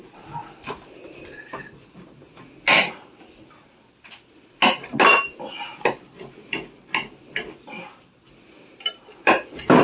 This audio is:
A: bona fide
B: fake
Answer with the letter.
A